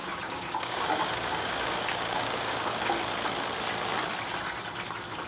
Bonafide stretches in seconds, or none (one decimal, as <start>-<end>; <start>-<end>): 2.5-5.3